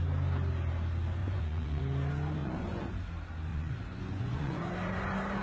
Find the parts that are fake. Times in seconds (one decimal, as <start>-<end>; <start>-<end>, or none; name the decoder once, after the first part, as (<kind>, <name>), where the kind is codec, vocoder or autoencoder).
1.2-1.8 (vocoder, Vocos); 2.4-2.9; 3.5-4.6